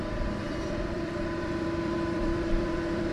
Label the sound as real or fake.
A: fake